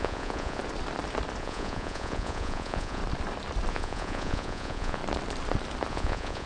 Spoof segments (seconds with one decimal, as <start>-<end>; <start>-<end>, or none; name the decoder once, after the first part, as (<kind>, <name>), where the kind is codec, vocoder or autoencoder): 0.0-0.6 (vocoder, Vocos); 1.4-3.0; 3.7-5.0; 5.9-6.5